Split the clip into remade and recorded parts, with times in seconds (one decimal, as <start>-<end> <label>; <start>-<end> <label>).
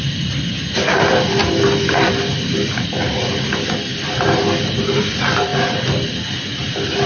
0.0-7.1 recorded